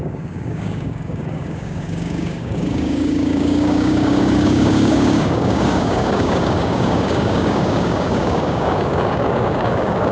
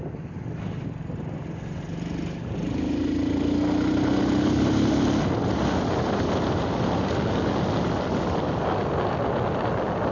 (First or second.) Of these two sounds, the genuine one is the second